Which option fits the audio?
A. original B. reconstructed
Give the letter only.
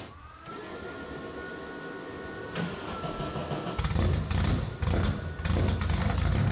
A